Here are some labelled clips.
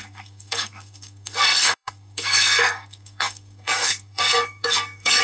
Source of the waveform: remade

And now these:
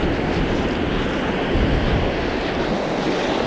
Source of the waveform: recorded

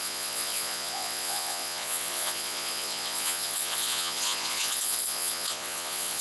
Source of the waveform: remade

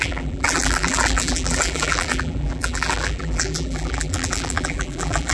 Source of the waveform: remade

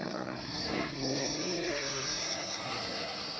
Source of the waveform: remade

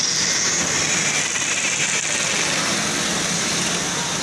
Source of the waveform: recorded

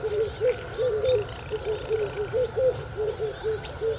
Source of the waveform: recorded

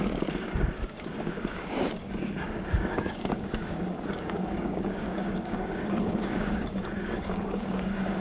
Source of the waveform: remade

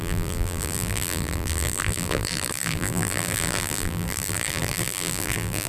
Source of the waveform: remade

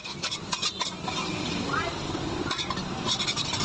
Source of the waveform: recorded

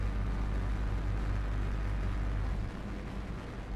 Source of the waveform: recorded